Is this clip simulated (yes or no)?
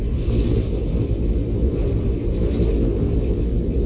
no